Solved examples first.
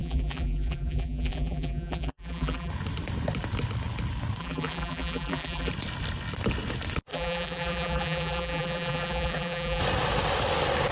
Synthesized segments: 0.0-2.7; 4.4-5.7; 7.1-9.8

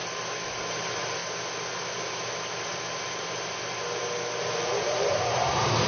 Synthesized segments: 0.7-1.2; 4.4-5.9

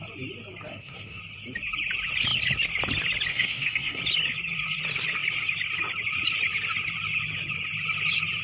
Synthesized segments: 0.7-1.2; 3.3-4.0

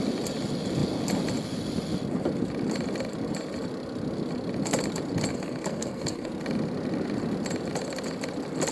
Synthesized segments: 5.3-6.3